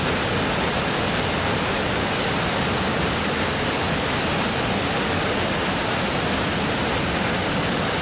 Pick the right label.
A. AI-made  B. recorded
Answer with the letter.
B